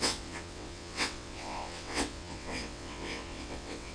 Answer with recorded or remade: remade